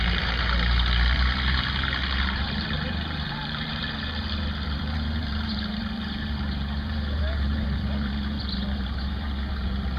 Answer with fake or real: fake